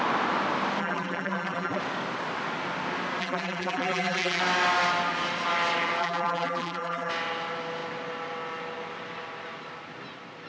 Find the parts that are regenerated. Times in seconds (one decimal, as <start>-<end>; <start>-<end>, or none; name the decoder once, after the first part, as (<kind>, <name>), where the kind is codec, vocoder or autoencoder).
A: 0.8-1.8 (vocoder, BigVGAN v2); 3.2-4.4; 6.0-7.1